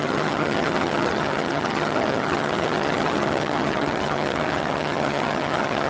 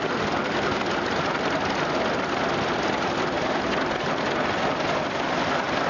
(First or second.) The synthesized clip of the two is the first